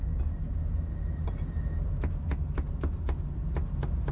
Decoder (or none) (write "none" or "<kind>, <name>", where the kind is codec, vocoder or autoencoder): none